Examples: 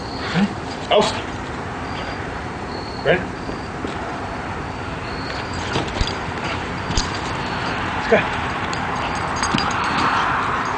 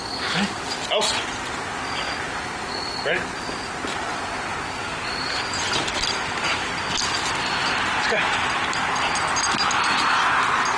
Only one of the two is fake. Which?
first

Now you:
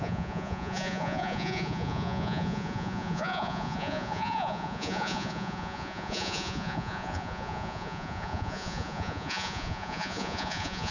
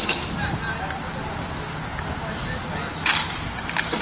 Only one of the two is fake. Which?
first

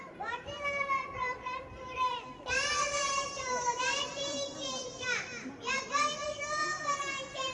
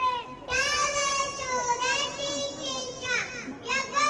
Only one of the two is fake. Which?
first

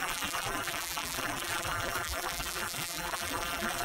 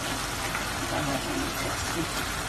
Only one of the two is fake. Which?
first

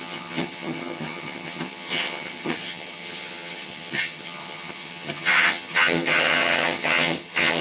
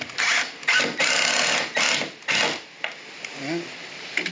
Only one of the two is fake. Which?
first